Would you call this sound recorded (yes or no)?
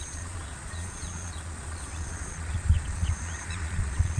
no